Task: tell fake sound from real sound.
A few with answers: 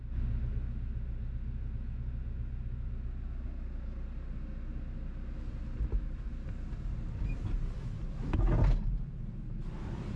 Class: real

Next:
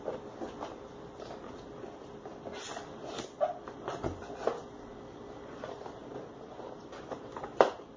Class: real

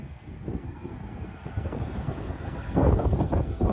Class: fake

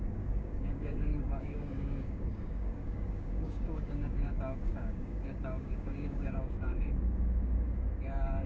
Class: fake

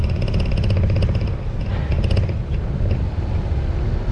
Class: real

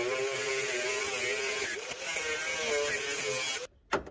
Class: real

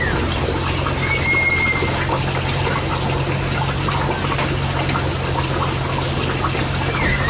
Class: real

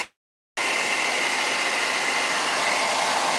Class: real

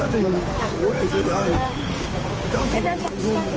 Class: fake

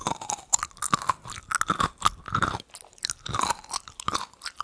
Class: real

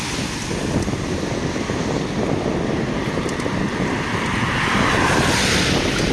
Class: real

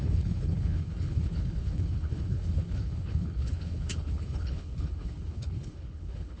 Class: fake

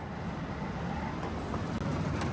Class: real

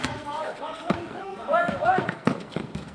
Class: fake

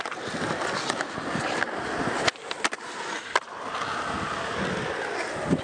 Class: real